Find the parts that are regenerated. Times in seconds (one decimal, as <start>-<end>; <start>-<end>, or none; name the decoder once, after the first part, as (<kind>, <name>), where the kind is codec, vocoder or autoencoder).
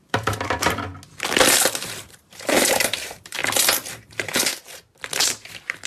0.0-0.9 (vocoder, BigVGAN v2); 1.7-3.4; 3.9-4.5; 5.1-5.9